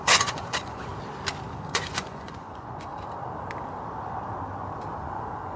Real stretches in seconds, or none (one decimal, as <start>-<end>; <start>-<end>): 0.9-1.5; 2.9-5.0